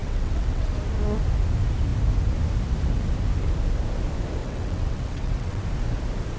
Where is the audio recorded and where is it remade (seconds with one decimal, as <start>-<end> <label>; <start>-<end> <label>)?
0.0-0.7 remade; 0.7-4.4 recorded; 4.4-5.6 remade; 5.6-6.4 recorded